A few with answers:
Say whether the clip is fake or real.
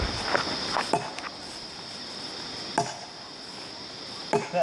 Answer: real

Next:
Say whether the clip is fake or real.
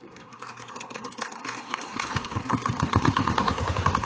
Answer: fake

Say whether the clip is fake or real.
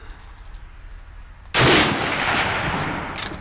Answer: real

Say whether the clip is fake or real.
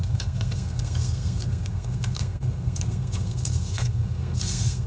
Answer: fake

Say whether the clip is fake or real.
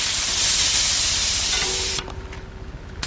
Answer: fake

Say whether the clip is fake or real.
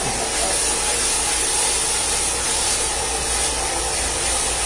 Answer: real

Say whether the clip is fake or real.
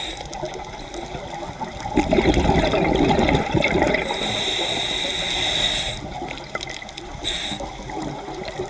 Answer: real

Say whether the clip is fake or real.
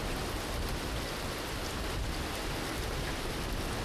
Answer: real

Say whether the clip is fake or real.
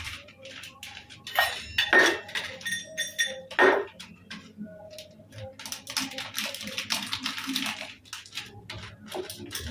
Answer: real